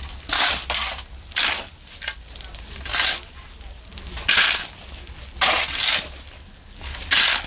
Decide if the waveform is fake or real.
real